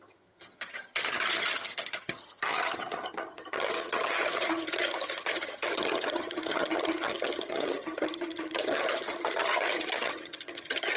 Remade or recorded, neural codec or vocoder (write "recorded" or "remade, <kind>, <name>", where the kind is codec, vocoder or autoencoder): remade, vocoder, HiFi-GAN